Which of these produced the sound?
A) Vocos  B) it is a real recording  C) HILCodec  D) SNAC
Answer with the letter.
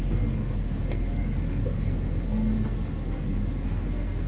D